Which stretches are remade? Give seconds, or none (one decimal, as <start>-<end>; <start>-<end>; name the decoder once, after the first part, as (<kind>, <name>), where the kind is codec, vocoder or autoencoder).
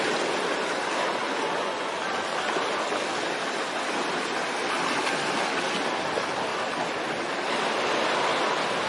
1.2-1.9 (vocoder, Vocos)